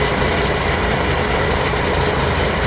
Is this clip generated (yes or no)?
yes